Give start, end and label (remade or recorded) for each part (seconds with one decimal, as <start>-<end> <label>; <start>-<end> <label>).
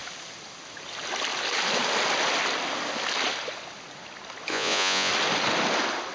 0.0-4.5 recorded; 4.5-5.1 remade; 5.1-6.1 recorded